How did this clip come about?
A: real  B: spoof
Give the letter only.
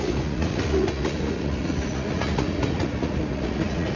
B